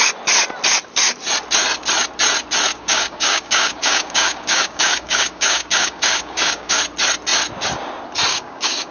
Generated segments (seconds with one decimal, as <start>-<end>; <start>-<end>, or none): 2.7-6.8; 8.3-8.9